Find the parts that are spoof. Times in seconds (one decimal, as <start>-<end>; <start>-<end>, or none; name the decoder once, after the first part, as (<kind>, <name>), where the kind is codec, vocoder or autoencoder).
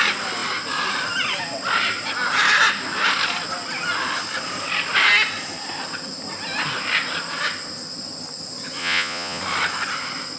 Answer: 8.8-9.4 (vocoder, Vocos)